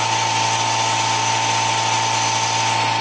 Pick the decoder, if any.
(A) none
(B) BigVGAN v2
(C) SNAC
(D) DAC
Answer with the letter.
A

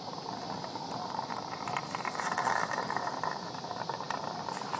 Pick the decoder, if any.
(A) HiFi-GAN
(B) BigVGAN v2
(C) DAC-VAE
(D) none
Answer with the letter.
B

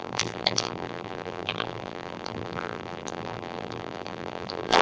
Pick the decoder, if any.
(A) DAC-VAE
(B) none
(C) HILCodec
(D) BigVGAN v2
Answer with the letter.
D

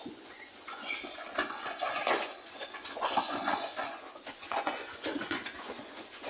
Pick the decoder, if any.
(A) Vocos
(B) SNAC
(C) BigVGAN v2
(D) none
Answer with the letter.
A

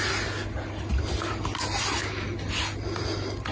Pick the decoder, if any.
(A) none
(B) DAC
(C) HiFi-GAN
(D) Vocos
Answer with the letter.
A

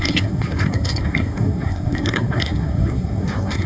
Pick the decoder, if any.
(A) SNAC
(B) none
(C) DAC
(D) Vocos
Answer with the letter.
A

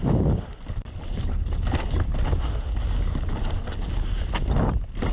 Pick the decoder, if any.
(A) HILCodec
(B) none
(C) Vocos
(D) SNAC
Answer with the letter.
B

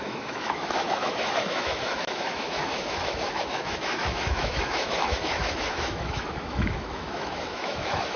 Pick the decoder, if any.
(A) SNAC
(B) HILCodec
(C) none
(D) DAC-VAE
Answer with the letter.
D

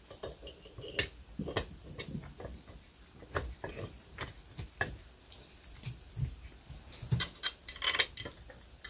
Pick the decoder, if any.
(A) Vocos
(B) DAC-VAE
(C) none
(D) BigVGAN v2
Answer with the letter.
C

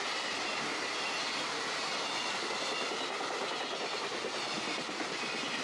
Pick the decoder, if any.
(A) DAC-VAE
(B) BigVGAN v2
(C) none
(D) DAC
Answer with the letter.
C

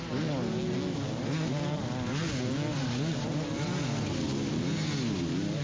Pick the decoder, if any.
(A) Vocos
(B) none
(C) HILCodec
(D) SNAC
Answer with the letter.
B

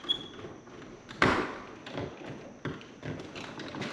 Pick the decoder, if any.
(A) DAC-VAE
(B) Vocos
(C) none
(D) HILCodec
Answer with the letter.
C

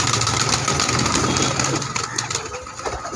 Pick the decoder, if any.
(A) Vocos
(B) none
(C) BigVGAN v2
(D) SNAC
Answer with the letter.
B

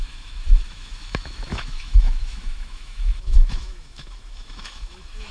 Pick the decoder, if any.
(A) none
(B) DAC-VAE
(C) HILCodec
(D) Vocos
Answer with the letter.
B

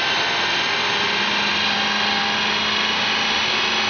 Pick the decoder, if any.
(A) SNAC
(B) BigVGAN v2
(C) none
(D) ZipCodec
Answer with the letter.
C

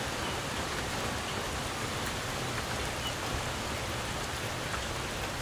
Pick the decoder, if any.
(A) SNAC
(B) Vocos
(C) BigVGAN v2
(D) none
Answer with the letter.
C